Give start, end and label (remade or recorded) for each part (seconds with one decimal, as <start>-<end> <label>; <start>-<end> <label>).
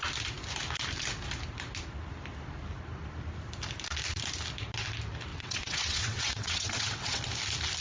0.0-5.3 recorded; 5.3-7.2 remade; 7.2-7.8 recorded